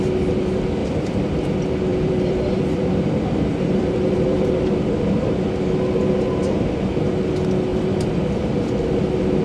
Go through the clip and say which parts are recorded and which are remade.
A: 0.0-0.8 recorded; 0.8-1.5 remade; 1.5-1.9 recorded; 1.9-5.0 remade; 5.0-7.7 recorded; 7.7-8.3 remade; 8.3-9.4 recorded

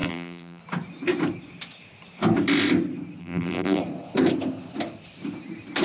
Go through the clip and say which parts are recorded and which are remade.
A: 0.0-0.6 remade; 0.6-3.2 recorded; 3.2-3.8 remade; 3.8-5.8 recorded